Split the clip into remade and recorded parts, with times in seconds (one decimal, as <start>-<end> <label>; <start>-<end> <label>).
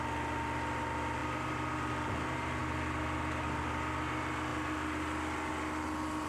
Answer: 0.0-6.3 recorded